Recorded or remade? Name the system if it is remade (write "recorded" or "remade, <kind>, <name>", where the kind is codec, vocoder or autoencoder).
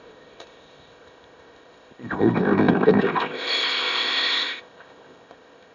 remade, codec, ZipCodec